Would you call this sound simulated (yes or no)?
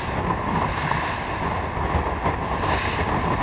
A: no